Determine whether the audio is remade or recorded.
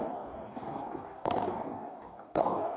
remade